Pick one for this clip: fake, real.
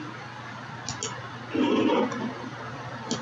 real